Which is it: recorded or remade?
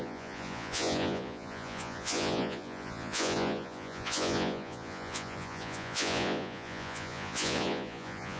remade